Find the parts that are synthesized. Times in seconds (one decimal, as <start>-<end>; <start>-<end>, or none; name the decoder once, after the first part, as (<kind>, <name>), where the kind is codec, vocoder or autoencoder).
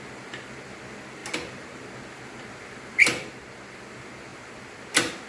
none